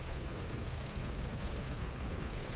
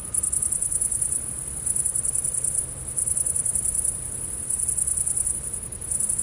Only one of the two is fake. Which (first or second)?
first